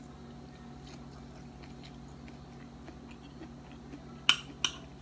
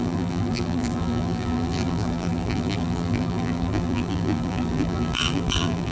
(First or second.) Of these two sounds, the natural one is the first